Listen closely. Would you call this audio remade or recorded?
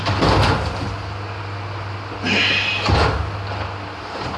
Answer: recorded